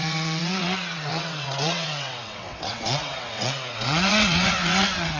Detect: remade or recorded remade